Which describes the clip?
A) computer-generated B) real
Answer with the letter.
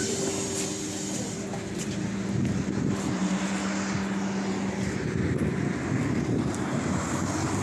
B